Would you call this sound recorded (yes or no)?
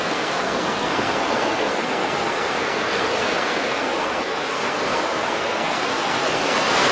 no